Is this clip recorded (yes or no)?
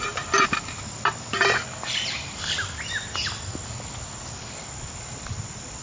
no